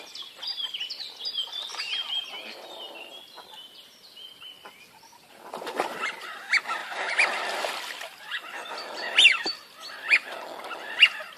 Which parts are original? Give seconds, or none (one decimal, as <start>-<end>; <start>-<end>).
0.0-6.8; 8.7-11.4

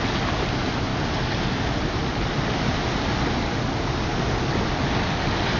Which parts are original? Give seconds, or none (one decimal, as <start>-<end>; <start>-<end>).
0.0-5.6